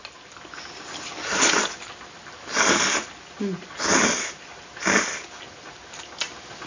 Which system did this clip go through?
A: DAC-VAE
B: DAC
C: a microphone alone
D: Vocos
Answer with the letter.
C